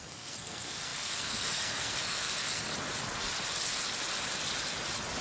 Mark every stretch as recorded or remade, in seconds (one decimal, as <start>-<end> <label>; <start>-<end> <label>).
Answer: 0.0-2.7 remade; 2.7-5.2 recorded